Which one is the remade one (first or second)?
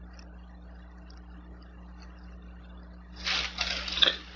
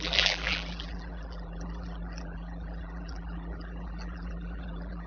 second